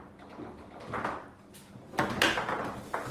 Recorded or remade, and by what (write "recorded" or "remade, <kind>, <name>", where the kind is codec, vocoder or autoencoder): recorded